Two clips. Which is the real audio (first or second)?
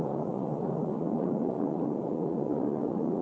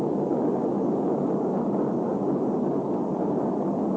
second